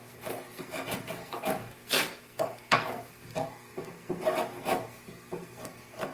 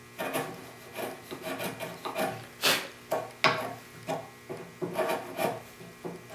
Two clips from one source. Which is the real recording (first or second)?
second